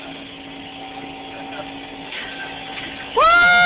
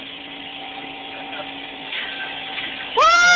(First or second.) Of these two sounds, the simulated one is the second